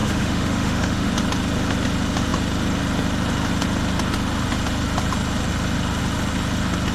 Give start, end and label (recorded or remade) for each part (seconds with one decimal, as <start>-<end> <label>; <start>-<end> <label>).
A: 0.0-1.1 remade; 1.1-6.9 recorded